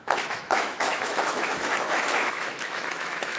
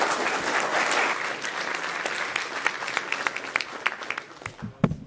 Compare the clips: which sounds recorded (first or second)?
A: second